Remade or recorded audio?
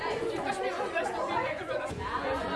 remade